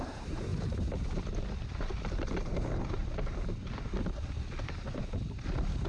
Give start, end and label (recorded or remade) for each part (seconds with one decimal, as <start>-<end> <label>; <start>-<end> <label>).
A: 0.0-0.5 remade; 0.5-1.8 recorded; 1.8-3.0 remade; 3.0-5.0 recorded; 5.0-5.9 remade